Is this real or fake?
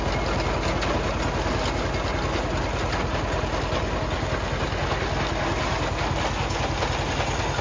real